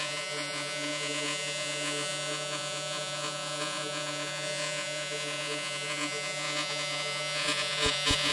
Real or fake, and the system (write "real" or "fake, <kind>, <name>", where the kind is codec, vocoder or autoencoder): fake, vocoder, Vocos